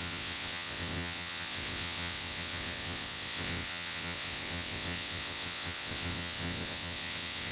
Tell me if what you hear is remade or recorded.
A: remade